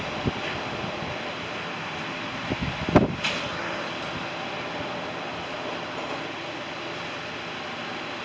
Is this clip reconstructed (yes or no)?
no